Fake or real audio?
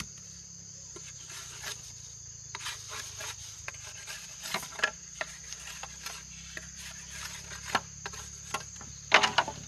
real